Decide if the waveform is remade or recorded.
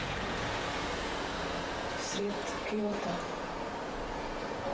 remade